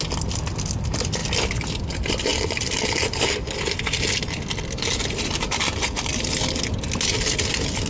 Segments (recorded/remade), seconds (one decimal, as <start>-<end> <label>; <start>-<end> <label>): 0.0-1.2 recorded; 1.2-1.8 remade; 1.8-2.3 recorded; 2.3-5.3 remade; 5.3-7.9 recorded